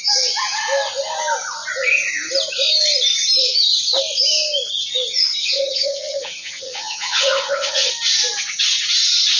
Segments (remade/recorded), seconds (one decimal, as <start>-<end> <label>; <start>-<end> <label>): 0.0-5.4 recorded; 5.4-7.9 remade; 7.9-9.4 recorded